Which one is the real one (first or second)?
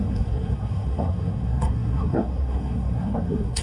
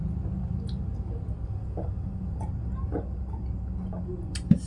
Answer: second